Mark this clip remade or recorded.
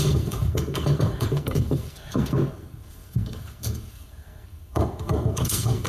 remade